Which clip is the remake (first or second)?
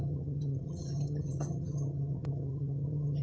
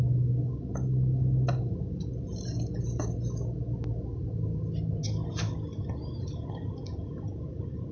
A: first